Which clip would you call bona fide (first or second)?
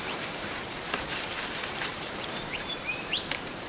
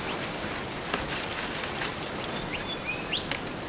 second